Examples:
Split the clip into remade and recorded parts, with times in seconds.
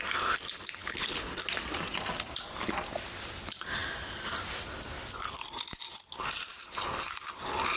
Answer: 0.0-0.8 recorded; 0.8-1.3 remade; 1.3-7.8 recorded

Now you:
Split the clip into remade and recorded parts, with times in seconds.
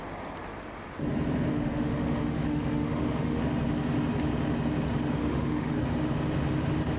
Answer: 0.0-1.5 recorded; 1.5-3.4 remade; 3.4-5.2 recorded; 5.2-5.8 remade; 5.8-7.0 recorded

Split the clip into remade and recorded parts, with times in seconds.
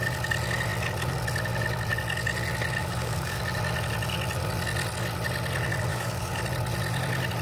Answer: 0.0-2.8 recorded; 2.8-3.4 remade; 3.4-5.9 recorded; 5.9-6.4 remade; 6.4-7.4 recorded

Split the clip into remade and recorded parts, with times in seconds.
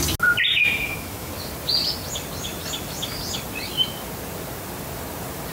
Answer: 0.0-0.5 recorded; 0.5-1.3 remade; 1.3-5.5 recorded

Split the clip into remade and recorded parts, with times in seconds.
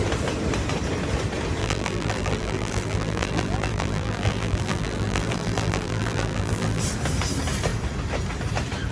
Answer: 0.0-1.6 recorded; 1.6-6.8 remade; 6.8-8.9 recorded